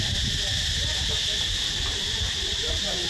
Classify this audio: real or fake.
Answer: fake